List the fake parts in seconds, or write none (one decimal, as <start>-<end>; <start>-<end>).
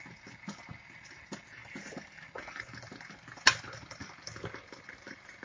none